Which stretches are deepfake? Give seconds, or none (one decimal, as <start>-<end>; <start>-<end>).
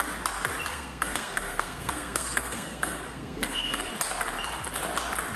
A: 0.7-3.9